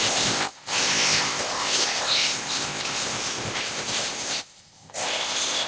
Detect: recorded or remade remade